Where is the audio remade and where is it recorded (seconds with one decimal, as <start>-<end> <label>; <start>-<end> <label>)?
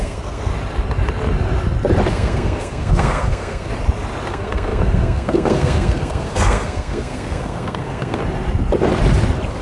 0.0-0.5 remade; 0.5-2.1 recorded; 2.1-3.7 remade; 3.7-4.3 recorded; 4.3-8.2 remade; 8.2-9.6 recorded